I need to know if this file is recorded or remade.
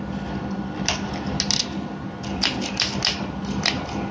recorded